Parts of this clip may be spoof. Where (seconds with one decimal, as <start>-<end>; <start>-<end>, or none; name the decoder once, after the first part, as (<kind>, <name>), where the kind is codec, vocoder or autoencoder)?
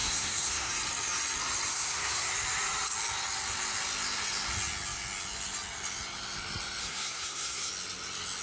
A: 0.0-0.7 (codec, SNAC); 1.7-2.3; 6.8-7.7